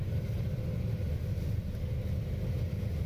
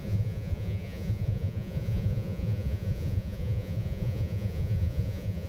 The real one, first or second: first